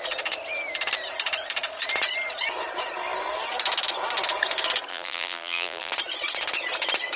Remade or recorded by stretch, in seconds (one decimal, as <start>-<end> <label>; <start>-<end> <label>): 0.0-4.9 recorded; 4.9-5.9 remade; 5.9-7.2 recorded